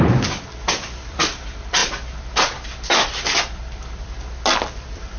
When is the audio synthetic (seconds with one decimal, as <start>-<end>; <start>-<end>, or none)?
none